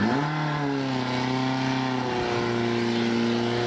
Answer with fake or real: real